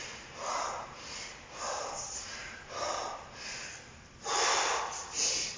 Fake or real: real